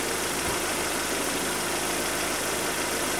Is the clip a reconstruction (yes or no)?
no